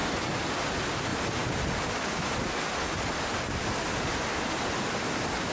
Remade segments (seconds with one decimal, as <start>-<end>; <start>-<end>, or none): none